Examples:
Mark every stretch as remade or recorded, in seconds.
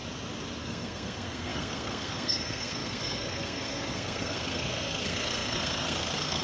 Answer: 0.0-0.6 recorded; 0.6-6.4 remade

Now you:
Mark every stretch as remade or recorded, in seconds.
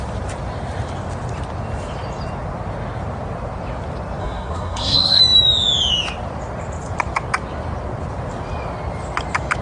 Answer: 0.0-4.2 recorded; 4.2-5.2 remade; 5.2-9.6 recorded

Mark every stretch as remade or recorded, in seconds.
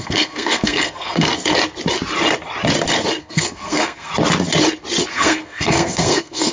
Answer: 0.0-1.3 remade; 1.3-3.2 recorded; 3.2-4.1 remade; 4.1-5.1 recorded; 5.1-6.5 remade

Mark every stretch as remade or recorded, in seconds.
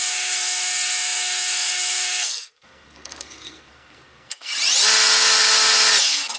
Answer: 0.0-4.5 remade; 4.5-6.0 recorded; 6.0-6.4 remade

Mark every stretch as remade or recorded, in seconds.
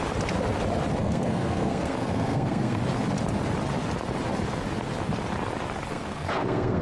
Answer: 0.0-1.0 recorded; 1.0-2.8 remade; 2.8-5.9 recorded; 5.9-6.8 remade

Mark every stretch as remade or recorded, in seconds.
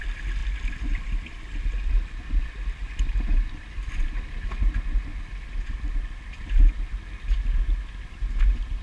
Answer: 0.0-8.8 recorded